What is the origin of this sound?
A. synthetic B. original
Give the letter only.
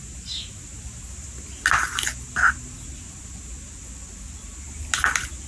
B